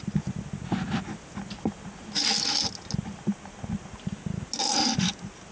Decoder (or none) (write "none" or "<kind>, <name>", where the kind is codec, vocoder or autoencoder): none